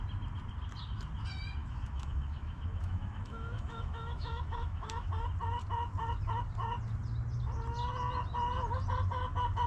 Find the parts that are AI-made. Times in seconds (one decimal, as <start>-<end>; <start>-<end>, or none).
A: 1.6-5.1